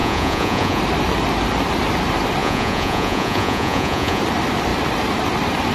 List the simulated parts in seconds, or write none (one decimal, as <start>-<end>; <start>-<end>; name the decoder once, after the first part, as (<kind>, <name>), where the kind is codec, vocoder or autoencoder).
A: 0.0-0.8 (vocoder, Vocos); 2.4-4.2